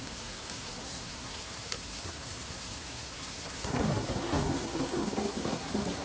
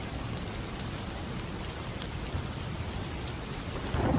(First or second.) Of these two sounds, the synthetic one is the first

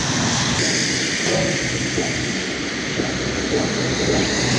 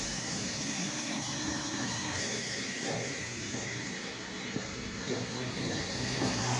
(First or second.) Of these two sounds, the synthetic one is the second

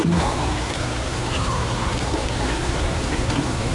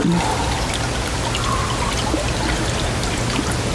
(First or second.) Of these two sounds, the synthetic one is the first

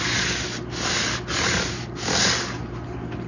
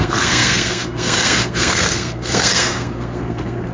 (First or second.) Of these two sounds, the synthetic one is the second